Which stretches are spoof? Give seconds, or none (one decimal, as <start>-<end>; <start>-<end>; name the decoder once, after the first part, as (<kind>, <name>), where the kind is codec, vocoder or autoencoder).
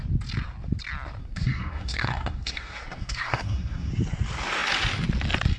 1.2-3.9 (codec, SNAC)